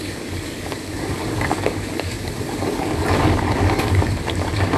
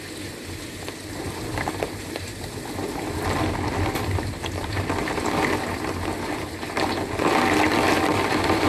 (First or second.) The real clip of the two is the second